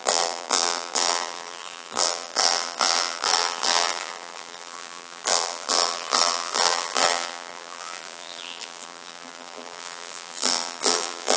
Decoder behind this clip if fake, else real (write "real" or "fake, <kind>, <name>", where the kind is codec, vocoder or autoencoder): fake, vocoder, BigVGAN v2